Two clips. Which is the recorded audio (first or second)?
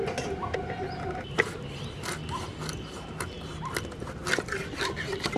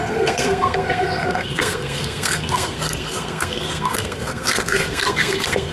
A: first